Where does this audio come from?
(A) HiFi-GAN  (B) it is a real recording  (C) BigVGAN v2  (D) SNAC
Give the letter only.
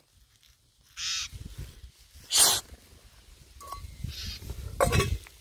B